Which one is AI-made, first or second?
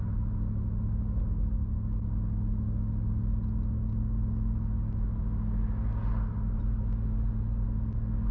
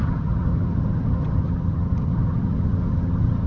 second